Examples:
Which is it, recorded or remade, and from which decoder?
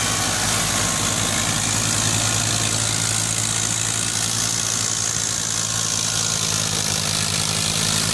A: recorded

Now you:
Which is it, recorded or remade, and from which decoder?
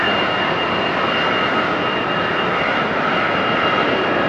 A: recorded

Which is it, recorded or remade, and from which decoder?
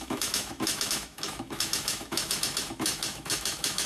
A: remade, autoencoder, DAC-VAE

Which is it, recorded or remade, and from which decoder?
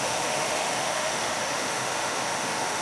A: remade, autoencoder, DAC-VAE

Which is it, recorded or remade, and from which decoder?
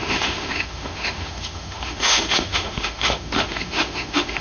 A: remade, autoencoder, DAC-VAE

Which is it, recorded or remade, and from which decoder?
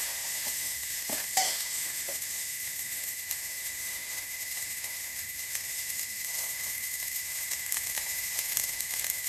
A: remade, autoencoder, DAC-VAE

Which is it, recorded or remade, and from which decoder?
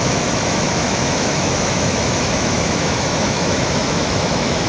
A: remade, autoencoder, DAC-VAE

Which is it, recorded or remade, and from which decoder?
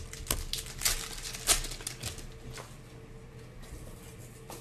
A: recorded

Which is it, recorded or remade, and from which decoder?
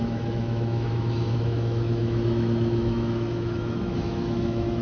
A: remade, autoencoder, DAC-VAE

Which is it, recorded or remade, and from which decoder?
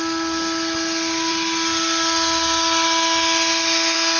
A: recorded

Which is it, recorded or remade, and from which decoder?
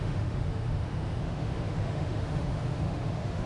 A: remade, autoencoder, DAC-VAE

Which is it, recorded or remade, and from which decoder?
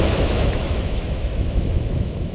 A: remade, autoencoder, DAC-VAE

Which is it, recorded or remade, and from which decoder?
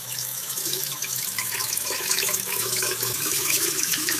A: remade, autoencoder, DAC-VAE